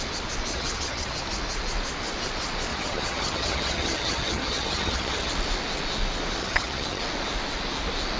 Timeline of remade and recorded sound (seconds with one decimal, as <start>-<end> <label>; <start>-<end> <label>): 0.0-0.5 recorded; 0.5-1.2 remade; 1.2-2.7 recorded; 2.7-5.3 remade; 5.3-6.4 recorded; 6.4-7.0 remade; 7.0-8.2 recorded